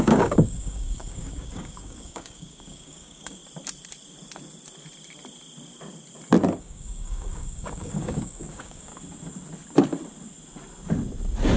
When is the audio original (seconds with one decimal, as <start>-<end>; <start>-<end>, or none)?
3.4-6.6; 8.9-11.6